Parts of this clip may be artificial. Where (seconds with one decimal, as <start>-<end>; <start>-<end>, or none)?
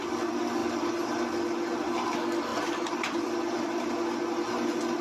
2.5-3.9